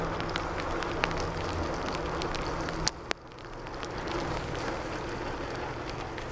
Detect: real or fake real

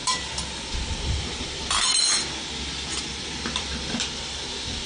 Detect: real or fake real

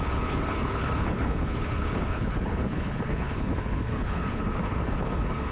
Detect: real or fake fake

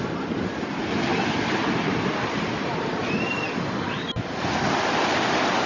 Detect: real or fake real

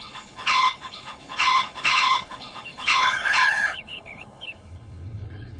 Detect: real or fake fake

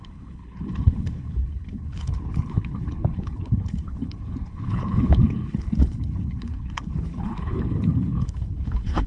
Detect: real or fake fake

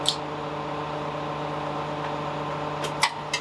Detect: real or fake real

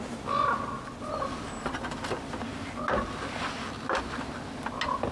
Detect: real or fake real